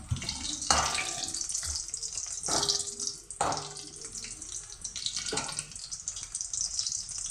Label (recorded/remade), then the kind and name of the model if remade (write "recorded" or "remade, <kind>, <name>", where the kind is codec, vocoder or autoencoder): recorded